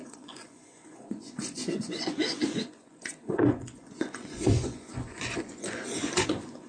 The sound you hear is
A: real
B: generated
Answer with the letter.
B